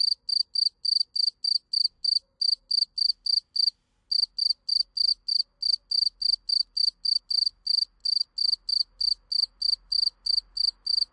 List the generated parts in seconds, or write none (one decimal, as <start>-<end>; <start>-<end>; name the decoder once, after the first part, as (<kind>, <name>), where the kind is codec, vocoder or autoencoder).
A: none

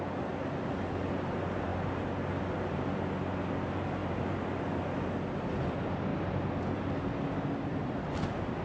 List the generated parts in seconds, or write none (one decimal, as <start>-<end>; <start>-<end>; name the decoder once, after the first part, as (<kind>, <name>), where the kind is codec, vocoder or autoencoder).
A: 7.7-8.6 (vocoder, BigVGAN v2)

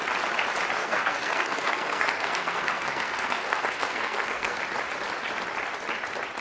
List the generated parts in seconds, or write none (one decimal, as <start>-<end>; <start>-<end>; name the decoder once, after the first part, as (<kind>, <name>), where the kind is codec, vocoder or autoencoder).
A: 0.8-4.6 (codec, SNAC)

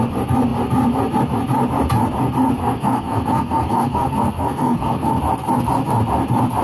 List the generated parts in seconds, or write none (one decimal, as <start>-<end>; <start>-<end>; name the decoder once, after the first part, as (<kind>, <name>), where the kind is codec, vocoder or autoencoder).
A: 2.6-5.2 (codec, SNAC)

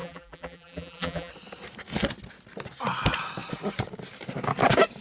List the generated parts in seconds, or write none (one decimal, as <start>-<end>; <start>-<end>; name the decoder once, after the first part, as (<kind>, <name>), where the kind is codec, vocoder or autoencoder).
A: 0.0-1.3 (vocoder, BigVGAN v2)

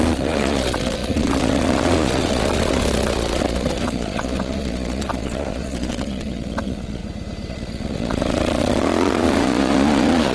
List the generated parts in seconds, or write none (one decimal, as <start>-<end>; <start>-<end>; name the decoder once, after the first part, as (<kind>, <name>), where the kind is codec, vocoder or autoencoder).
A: 0.0-7.0 (vocoder, Vocos); 7.5-10.3

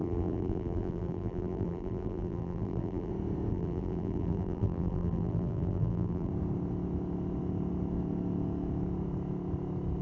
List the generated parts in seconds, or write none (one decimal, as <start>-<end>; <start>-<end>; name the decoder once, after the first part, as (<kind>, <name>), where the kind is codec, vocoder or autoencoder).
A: 0.0-3.1 (vocoder, BigVGAN v2); 3.5-6.3